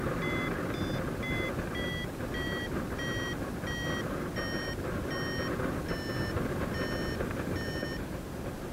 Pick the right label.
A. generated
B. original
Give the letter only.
B